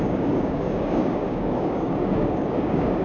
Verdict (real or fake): fake